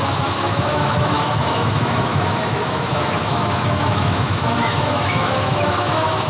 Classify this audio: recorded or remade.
remade